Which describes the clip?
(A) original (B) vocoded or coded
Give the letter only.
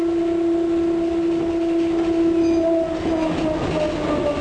A